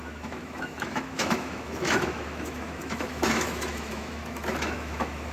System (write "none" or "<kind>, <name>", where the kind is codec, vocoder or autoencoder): autoencoder, DAC-VAE